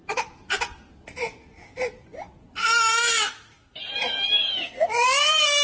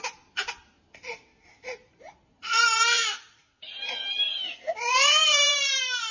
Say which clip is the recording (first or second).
first